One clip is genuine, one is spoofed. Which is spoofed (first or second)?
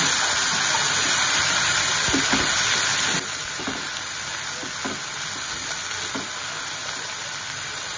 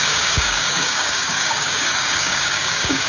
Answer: second